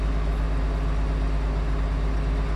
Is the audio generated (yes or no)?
no